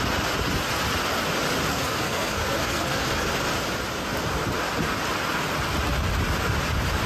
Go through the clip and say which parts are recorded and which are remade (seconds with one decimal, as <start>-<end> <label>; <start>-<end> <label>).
0.0-1.7 recorded; 1.7-3.3 remade; 3.3-7.1 recorded